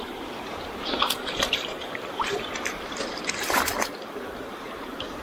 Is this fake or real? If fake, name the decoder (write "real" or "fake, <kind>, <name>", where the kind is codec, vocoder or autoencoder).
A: fake, vocoder, BigVGAN v2